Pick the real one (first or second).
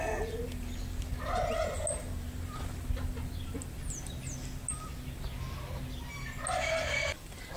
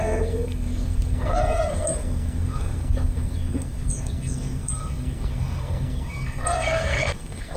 first